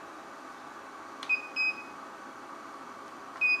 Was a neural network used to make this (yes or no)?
no